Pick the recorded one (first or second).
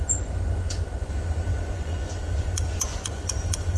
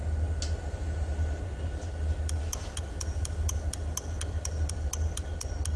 second